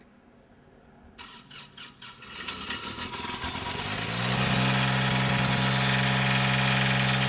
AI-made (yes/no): no